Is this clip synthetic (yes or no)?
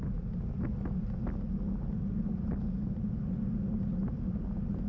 no